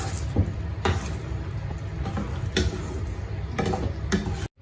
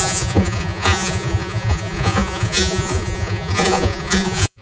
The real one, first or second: first